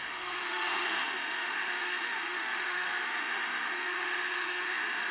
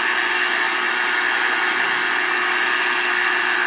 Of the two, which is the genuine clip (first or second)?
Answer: second